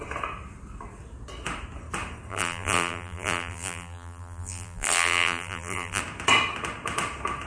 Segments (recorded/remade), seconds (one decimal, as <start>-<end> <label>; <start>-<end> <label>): 0.0-2.3 recorded; 2.3-6.0 remade; 6.0-7.5 recorded